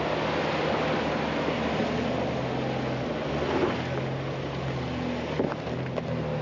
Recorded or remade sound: recorded